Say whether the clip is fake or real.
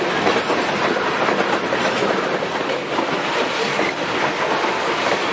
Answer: fake